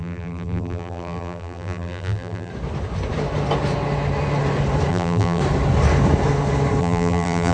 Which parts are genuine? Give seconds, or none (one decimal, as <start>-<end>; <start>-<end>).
2.5-4.9; 5.4-6.8